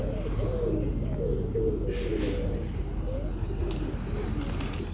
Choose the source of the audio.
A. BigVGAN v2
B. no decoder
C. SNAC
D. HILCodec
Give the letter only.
B